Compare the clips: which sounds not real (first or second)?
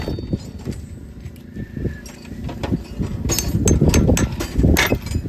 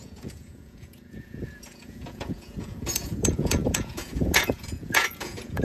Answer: second